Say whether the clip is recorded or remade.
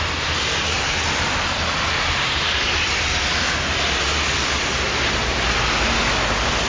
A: recorded